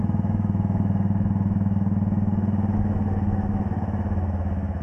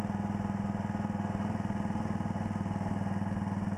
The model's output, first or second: first